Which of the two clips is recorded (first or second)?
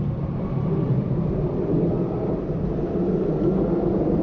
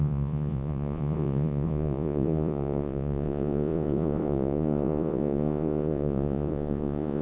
first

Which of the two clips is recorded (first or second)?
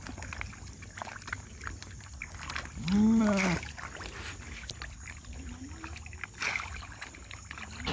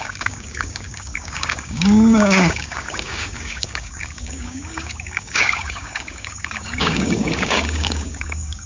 first